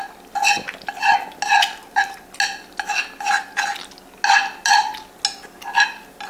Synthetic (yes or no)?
no